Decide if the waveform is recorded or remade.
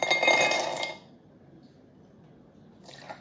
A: recorded